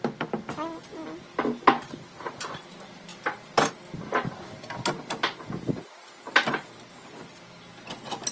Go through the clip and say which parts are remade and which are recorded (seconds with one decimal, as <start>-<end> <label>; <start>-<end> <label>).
0.0-8.3 recorded